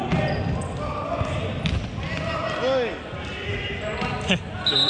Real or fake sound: real